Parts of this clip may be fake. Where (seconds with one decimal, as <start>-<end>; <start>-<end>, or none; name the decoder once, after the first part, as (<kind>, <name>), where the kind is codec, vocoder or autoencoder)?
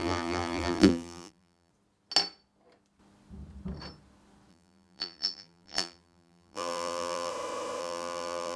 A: 0.0-1.7 (vocoder, BigVGAN v2); 4.5-7.3; 7.8-8.6